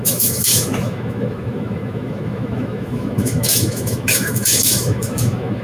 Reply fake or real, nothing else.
fake